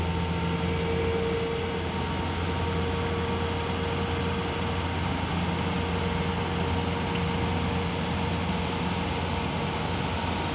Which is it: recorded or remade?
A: recorded